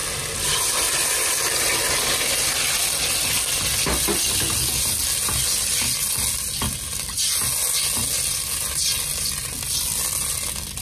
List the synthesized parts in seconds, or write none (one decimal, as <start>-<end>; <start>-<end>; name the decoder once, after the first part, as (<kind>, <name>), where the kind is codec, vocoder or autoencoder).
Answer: none